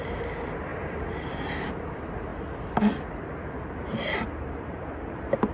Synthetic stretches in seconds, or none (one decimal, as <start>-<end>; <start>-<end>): 0.7-1.4; 2.3-2.8